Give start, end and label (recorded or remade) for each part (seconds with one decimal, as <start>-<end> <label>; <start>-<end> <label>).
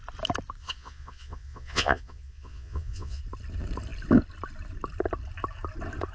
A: 0.0-0.6 recorded; 0.6-3.2 remade; 3.2-6.1 recorded